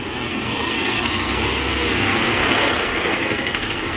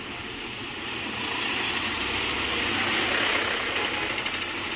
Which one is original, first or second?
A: second